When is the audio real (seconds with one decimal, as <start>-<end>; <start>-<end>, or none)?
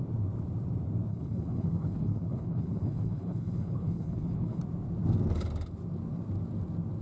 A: 0.0-1.1; 4.6-7.0